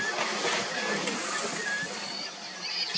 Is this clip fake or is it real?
real